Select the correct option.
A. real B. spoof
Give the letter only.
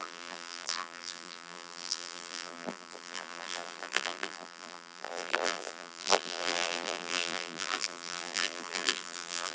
B